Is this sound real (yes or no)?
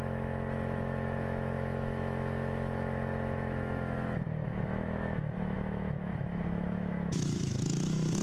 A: no